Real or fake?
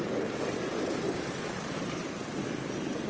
real